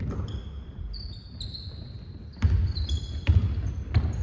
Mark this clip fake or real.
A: real